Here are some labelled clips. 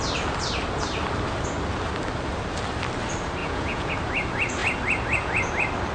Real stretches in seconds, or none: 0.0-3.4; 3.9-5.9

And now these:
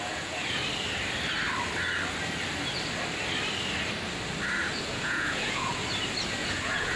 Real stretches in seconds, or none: 0.6-4.8; 5.8-6.4

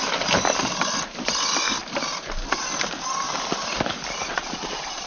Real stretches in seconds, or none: 0.0-4.3